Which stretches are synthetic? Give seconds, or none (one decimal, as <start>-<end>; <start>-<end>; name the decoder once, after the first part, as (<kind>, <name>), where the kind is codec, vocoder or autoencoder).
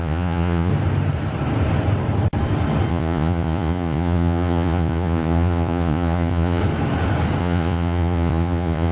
0.0-0.7 (vocoder, Vocos); 2.9-6.6; 7.4-8.9